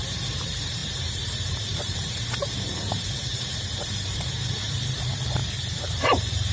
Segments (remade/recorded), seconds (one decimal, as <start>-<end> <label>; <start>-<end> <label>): 0.0-5.4 remade; 5.4-6.0 recorded; 6.0-6.5 remade